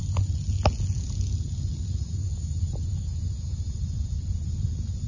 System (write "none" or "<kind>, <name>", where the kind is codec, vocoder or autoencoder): none